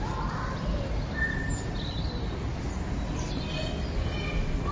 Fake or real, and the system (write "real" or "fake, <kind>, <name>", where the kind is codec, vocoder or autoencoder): real